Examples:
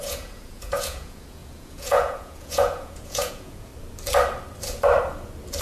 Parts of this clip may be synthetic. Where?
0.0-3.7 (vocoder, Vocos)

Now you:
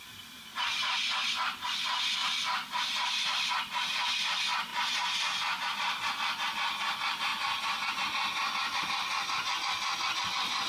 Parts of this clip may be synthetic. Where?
2.2-3.5 (vocoder, BigVGAN v2); 4.7-6.1